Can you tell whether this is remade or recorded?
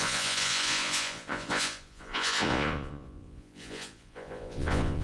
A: remade